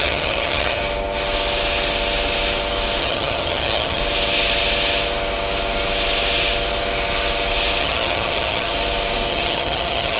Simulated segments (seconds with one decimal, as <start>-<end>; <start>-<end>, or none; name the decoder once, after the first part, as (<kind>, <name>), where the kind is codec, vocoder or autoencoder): 0.0-0.8 (vocoder, HiFi-GAN); 3.0-4.0; 7.8-8.7; 9.3-10.2